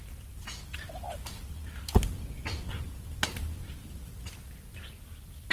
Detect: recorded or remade recorded